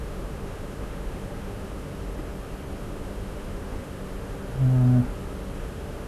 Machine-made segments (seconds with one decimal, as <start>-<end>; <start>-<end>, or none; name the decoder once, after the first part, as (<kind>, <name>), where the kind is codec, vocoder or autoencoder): 0.0-1.9 (autoencoder, DAC-VAE); 2.8-4.0; 5.6-6.1